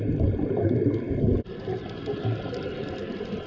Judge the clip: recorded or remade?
recorded